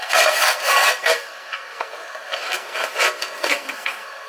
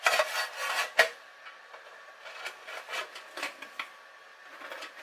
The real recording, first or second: second